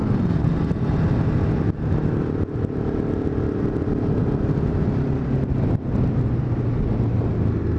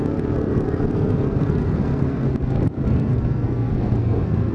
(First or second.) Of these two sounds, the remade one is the second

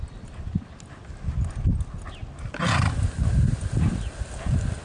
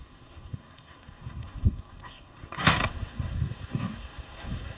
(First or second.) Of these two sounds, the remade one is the second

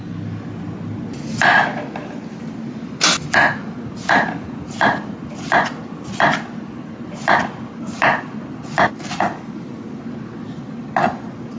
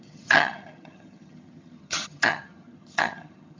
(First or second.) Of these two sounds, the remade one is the second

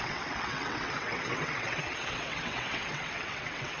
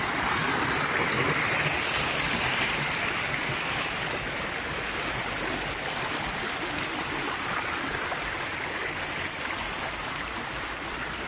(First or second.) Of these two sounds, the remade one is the first